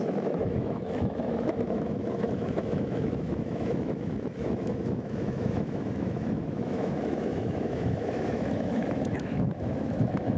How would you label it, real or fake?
fake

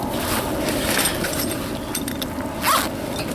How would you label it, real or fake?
real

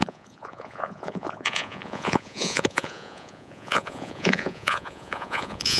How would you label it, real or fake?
fake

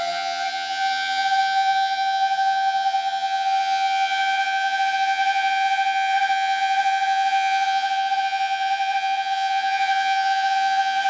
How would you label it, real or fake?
fake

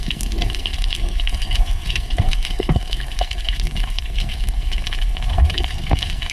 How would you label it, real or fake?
fake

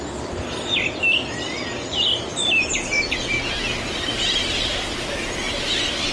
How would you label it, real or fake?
real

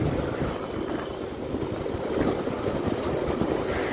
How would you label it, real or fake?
real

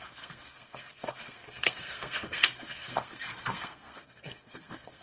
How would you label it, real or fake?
fake